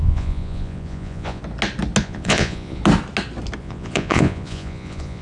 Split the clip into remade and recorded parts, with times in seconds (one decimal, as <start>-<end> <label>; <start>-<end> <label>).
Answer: 0.0-1.4 remade; 1.4-2.0 recorded; 2.0-2.8 remade; 2.8-3.6 recorded; 3.6-5.2 remade